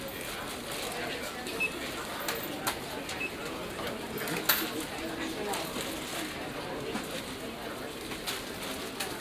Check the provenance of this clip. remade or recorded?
recorded